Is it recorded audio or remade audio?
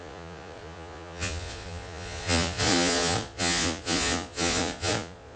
remade